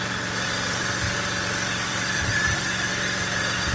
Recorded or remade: remade